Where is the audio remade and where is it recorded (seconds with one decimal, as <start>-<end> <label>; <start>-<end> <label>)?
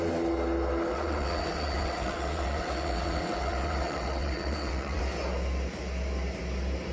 0.0-0.9 recorded; 0.9-5.0 remade; 5.0-6.9 recorded